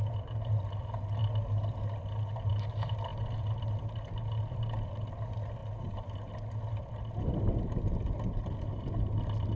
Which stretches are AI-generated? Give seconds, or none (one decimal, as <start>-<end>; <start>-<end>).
none